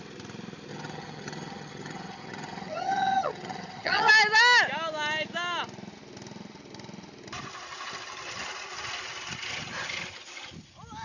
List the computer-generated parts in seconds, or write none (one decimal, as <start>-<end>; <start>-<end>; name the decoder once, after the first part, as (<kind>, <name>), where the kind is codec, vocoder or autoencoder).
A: 0.7-4.1 (vocoder, HiFi-GAN)